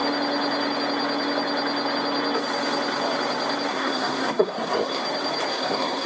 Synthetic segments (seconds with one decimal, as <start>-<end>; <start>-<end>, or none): 3.7-5.0; 5.5-6.1